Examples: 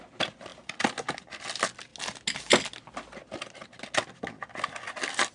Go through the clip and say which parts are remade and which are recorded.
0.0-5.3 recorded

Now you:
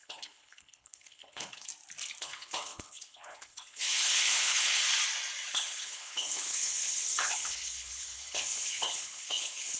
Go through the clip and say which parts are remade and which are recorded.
0.0-1.7 remade; 1.7-2.2 recorded; 2.2-4.8 remade; 4.8-5.5 recorded; 5.5-9.8 remade